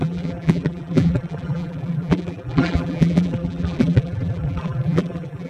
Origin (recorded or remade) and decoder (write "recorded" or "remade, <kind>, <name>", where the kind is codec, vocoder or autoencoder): remade, vocoder, BigVGAN v2